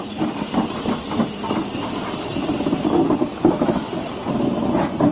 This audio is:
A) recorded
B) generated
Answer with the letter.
B